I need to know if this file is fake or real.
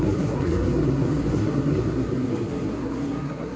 fake